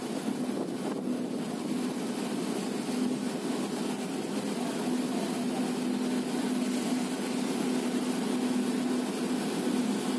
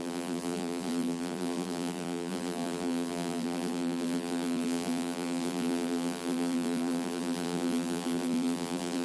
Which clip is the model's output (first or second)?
second